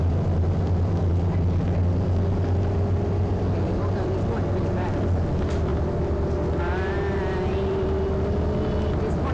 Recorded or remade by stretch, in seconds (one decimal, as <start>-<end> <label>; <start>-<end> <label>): 0.0-9.3 recorded